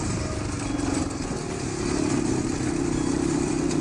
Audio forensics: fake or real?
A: real